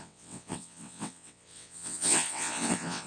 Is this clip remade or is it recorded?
remade